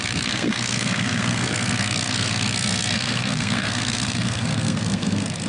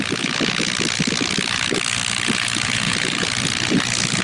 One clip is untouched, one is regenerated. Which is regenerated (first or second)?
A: first